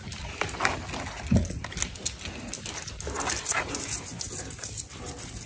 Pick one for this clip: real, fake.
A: real